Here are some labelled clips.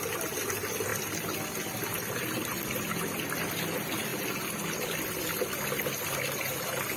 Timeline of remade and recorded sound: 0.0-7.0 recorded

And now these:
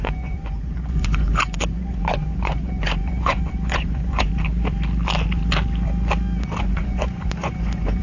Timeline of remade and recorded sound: 0.0-4.3 remade; 4.3-6.6 recorded; 6.6-8.0 remade

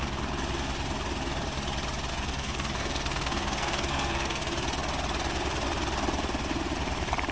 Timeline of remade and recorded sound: 0.0-2.1 recorded; 2.1-4.4 remade; 4.4-7.3 recorded

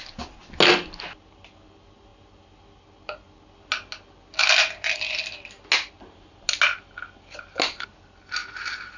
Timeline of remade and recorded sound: 0.0-8.4 recorded; 8.4-9.0 remade

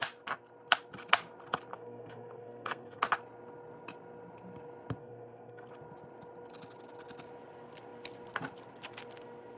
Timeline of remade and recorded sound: 0.0-1.7 recorded; 1.7-3.0 remade; 3.0-5.0 recorded; 5.0-5.7 remade; 5.7-9.6 recorded

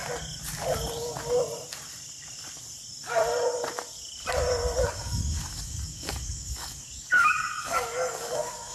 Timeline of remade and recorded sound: 0.0-4.9 recorded; 4.9-8.7 remade

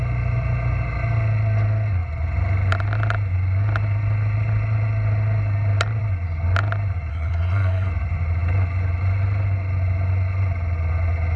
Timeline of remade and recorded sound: 0.0-7.1 recorded; 7.1-7.9 remade; 7.9-11.4 recorded

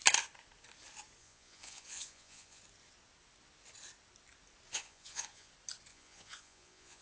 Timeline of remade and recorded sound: 0.0-1.2 recorded; 1.2-2.6 remade; 2.6-4.7 recorded; 4.7-5.5 remade; 5.5-5.9 recorded; 5.9-7.0 remade